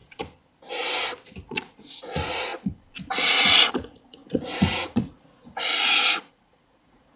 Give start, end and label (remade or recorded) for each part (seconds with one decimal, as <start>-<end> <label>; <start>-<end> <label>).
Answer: 0.0-1.4 recorded; 1.4-2.5 remade; 2.5-3.1 recorded; 3.1-7.2 remade